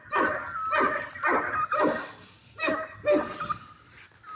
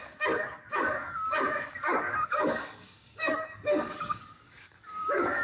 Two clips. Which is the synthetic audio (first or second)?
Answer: second